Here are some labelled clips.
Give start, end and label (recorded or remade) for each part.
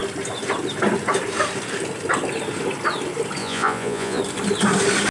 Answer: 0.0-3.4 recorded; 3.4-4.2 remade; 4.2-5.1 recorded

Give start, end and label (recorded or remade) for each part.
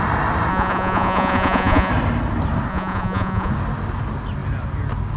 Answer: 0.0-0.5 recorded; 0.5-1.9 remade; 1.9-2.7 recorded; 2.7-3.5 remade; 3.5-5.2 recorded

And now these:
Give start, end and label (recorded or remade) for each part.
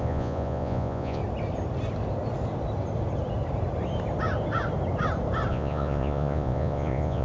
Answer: 0.0-1.2 remade; 1.2-5.5 recorded; 5.5-7.2 remade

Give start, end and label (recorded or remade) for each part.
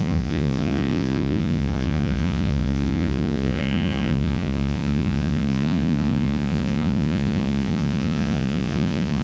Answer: 0.0-9.2 remade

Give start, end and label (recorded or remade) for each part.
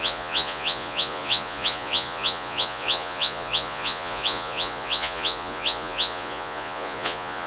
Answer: 0.0-7.5 remade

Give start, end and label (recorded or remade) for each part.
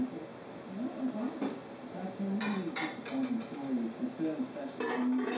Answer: 0.0-5.4 recorded